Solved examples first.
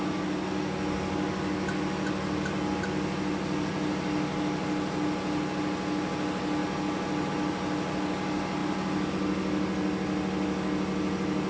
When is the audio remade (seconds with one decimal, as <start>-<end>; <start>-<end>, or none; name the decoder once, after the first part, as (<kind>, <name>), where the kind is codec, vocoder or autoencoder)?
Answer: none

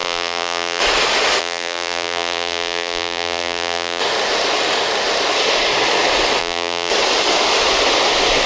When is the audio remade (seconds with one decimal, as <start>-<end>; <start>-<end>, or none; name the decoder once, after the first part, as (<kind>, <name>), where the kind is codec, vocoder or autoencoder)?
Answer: 0.0-0.8 (vocoder, BigVGAN v2); 1.4-4.0; 6.4-6.9

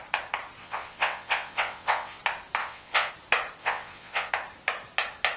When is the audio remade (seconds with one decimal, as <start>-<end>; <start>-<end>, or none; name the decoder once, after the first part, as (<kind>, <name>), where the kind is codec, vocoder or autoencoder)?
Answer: 0.6-2.2 (vocoder, WaveNeXt); 2.6-3.1; 3.6-4.3

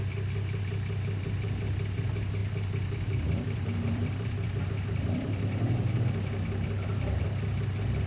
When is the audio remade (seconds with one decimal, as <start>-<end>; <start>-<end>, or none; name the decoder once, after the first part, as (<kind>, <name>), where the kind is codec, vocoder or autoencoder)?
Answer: 2.4-4.6 (vocoder, BigVGAN v2)

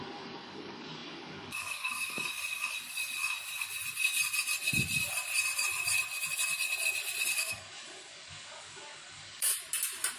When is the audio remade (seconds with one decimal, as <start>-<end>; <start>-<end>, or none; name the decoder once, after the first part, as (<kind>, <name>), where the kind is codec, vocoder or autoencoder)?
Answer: 0.0-2.3 (codec, DAC); 7.4-9.5

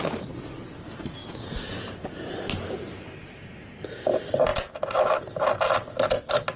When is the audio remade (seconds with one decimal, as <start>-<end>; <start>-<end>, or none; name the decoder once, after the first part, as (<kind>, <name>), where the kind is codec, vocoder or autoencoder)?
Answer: 1.2-2.3 (vocoder, Vocos)